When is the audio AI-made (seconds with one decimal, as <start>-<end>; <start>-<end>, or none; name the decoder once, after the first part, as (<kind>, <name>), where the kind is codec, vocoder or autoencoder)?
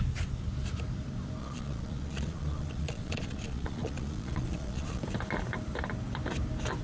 1.4-5.0 (vocoder, Vocos)